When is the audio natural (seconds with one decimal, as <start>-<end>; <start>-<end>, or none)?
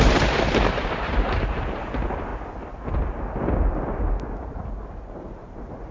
2.3-4.4